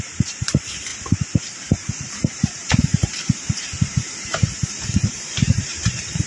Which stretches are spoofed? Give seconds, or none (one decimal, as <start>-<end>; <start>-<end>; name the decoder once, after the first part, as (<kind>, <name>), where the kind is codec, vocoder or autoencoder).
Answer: 0.0-0.9 (vocoder, BigVGAN v2); 2.1-2.9; 3.7-6.3